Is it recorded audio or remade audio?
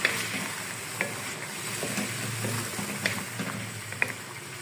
recorded